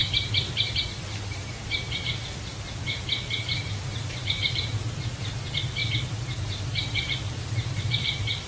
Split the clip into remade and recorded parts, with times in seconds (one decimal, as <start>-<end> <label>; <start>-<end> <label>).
0.0-3.7 recorded; 3.7-5.8 remade; 5.8-6.4 recorded; 6.4-8.5 remade

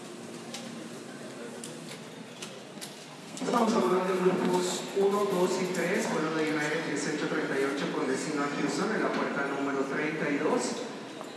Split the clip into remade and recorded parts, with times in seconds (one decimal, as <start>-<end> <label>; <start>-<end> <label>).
0.0-3.2 recorded; 3.2-4.8 remade; 4.8-11.4 recorded

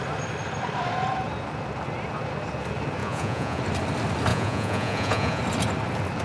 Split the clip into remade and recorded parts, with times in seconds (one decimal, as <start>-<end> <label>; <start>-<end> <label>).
0.0-3.0 recorded; 3.0-3.6 remade; 3.6-4.3 recorded; 4.3-5.4 remade; 5.4-6.2 recorded